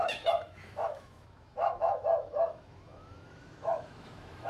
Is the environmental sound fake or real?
fake